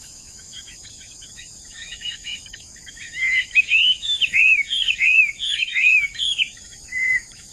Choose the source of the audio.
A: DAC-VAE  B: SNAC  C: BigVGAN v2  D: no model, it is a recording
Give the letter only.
A